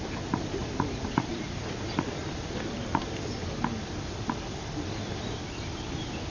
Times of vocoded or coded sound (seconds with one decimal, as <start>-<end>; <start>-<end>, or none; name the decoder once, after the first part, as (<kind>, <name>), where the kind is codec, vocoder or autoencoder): 0.6-1.6 (vocoder, BigVGAN v2); 2.2-2.7; 3.4-6.3